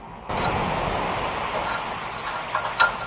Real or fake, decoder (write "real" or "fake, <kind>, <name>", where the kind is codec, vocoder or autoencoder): real